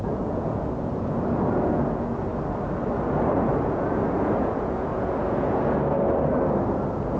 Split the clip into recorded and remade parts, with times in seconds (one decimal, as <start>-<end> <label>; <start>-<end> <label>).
0.0-2.3 remade; 2.3-3.3 recorded; 3.3-5.8 remade; 5.8-7.2 recorded